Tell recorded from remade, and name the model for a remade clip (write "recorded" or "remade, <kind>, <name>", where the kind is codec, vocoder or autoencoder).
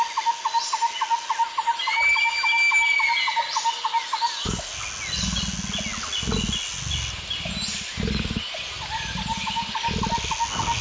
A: recorded